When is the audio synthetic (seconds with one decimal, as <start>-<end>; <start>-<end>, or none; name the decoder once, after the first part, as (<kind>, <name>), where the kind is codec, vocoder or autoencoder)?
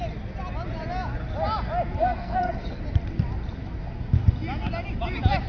2.0-2.8 (codec, SNAC)